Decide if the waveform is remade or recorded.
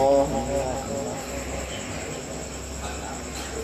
recorded